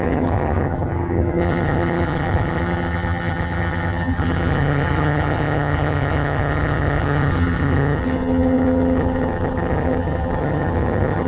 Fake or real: fake